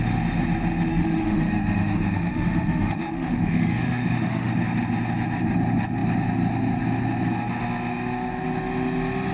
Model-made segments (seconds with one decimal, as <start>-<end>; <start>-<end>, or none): 0.9-4.5